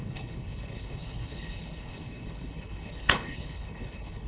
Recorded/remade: remade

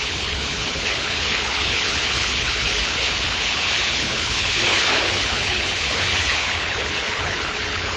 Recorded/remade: remade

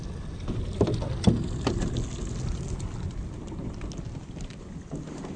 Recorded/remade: recorded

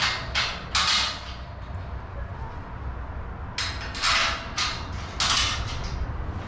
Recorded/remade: recorded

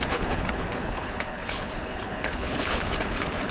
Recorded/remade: remade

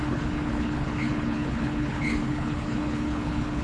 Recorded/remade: remade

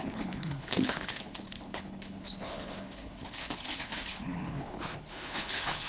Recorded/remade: remade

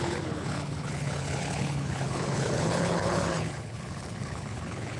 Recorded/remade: remade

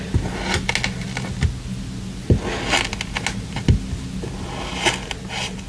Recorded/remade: recorded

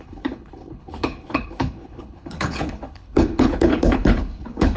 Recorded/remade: remade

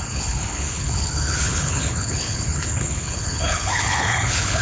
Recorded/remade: remade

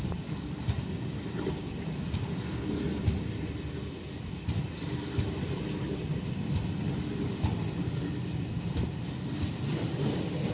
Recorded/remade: recorded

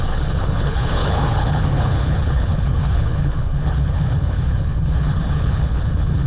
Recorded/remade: remade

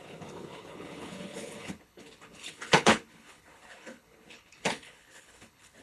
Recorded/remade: remade